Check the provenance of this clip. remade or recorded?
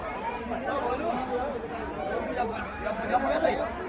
remade